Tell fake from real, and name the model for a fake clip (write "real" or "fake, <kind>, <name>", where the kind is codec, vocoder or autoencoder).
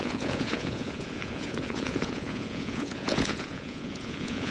fake, vocoder, Vocos